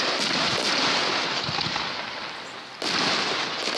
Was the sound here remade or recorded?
recorded